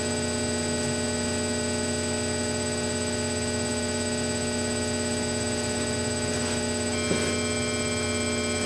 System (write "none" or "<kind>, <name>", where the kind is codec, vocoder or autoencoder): none